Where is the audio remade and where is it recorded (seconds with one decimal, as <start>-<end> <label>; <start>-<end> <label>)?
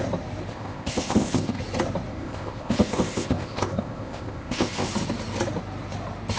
0.0-0.5 recorded; 0.5-1.6 remade; 1.6-2.1 recorded; 2.1-4.9 remade; 4.9-6.4 recorded